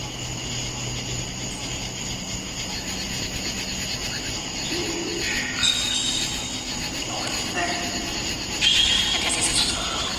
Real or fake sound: real